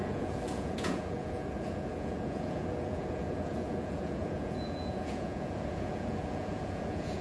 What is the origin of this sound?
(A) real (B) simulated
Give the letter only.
B